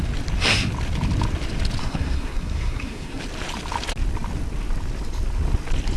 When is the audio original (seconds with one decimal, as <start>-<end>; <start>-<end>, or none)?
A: 0.0-1.8; 3.2-6.0